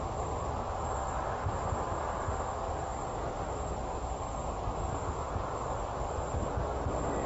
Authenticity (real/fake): real